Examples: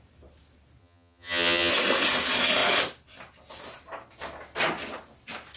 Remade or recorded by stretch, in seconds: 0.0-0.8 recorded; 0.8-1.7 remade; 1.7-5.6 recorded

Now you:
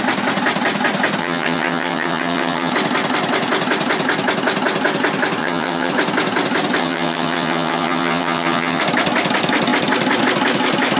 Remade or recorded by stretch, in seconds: 0.0-1.2 recorded; 1.2-2.7 remade; 2.7-5.4 recorded; 5.4-5.9 remade; 5.9-6.8 recorded; 6.8-8.8 remade; 8.8-11.0 recorded

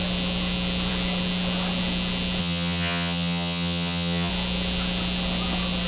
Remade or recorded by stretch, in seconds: 0.0-2.4 recorded; 2.4-4.3 remade; 4.3-5.9 recorded

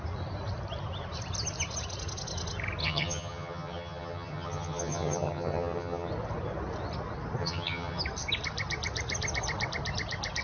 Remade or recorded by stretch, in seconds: 0.0-2.8 recorded; 2.8-6.1 remade; 6.1-7.4 recorded; 7.4-8.0 remade; 8.0-10.4 recorded